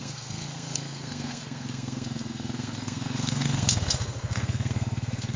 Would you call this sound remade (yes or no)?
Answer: yes